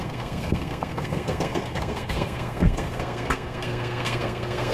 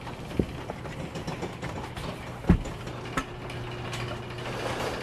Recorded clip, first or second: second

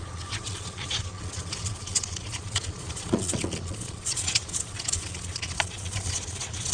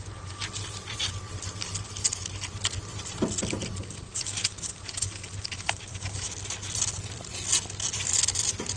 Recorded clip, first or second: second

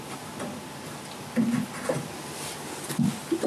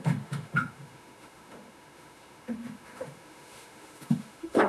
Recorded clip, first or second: first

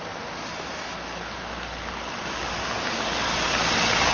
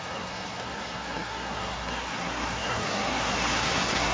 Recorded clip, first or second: first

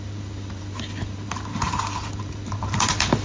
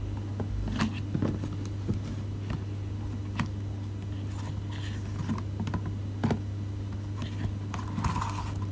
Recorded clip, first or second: second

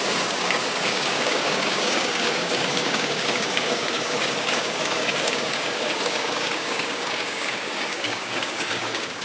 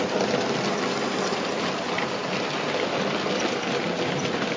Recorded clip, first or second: second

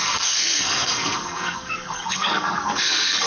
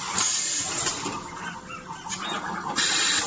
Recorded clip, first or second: second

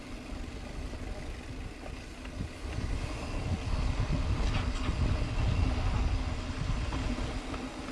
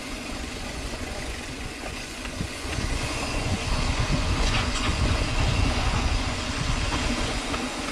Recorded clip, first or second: first